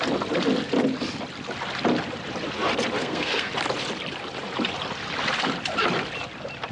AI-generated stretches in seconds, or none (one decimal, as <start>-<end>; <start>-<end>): 3.0-3.5